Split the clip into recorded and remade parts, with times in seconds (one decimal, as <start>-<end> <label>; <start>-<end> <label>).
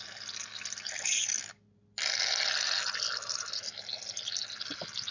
0.0-1.2 remade; 1.2-3.1 recorded; 3.1-5.1 remade